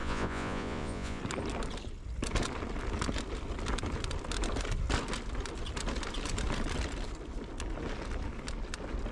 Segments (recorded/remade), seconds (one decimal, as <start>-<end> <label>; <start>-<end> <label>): 0.0-1.2 remade; 1.2-9.1 recorded